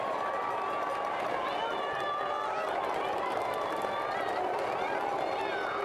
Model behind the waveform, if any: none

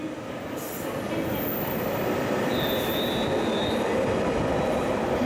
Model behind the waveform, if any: none